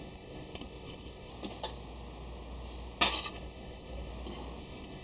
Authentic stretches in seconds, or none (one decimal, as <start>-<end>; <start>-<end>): 1.3-3.3; 4.1-4.6